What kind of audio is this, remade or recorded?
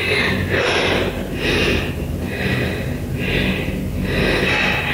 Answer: recorded